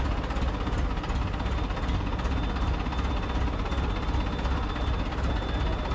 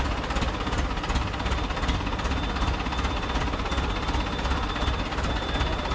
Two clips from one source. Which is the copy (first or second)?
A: second